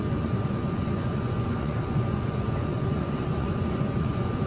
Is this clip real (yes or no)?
no